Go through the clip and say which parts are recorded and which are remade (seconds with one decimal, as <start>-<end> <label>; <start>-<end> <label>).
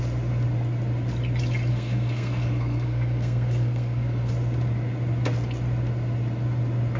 0.0-1.7 recorded; 1.7-4.3 remade; 4.3-7.0 recorded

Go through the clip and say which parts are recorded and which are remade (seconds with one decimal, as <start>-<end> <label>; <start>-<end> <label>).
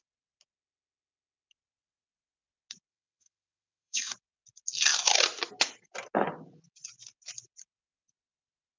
0.0-2.9 recorded; 2.9-4.1 remade; 4.1-8.8 recorded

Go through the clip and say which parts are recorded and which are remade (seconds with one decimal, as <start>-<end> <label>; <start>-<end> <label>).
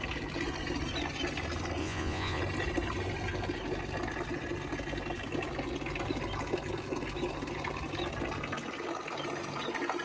0.0-1.8 recorded; 1.8-2.4 remade; 2.4-10.0 recorded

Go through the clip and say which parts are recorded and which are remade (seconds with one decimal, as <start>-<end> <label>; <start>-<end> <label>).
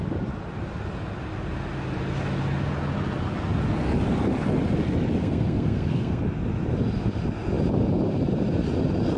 0.0-5.2 recorded; 5.2-6.2 remade; 6.2-9.2 recorded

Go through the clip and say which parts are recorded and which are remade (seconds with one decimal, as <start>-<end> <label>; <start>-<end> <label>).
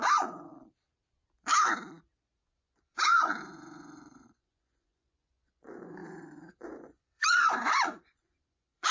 0.0-0.5 remade; 0.5-2.4 recorded; 2.4-8.9 remade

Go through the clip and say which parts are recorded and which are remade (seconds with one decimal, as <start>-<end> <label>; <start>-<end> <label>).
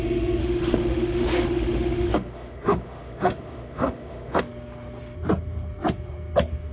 0.0-0.4 recorded; 0.4-4.4 remade; 4.4-6.7 recorded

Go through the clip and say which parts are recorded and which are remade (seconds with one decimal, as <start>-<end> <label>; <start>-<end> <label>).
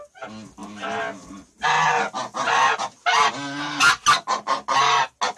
0.0-5.4 recorded